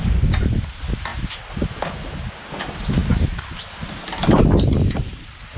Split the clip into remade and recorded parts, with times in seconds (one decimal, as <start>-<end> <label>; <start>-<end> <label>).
0.0-5.6 recorded